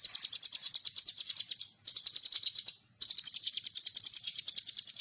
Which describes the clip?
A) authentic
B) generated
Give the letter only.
B